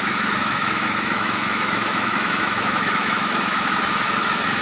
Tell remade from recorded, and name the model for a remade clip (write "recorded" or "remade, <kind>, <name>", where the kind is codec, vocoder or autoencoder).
remade, autoencoder, DAC-VAE